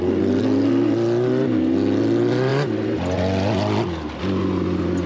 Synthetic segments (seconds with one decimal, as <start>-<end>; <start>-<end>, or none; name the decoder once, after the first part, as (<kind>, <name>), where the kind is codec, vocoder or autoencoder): none